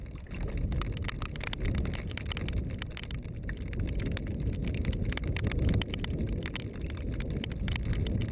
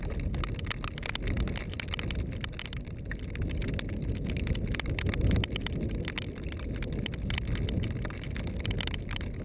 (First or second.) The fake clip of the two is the first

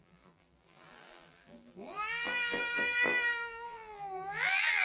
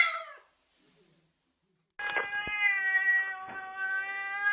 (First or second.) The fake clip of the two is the first